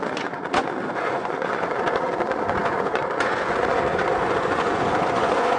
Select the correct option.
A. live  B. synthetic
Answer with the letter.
B